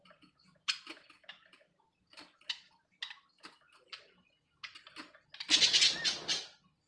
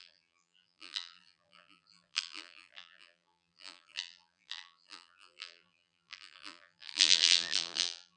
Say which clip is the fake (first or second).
second